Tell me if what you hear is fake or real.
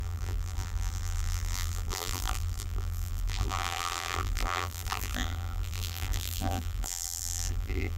fake